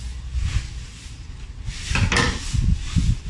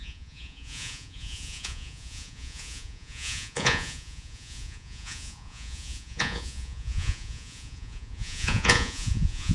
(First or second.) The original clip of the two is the first